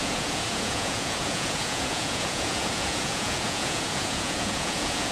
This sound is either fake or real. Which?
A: fake